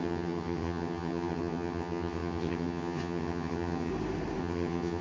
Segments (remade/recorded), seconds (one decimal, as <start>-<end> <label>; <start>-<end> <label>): 0.0-3.9 remade; 3.9-4.4 recorded; 4.4-5.0 remade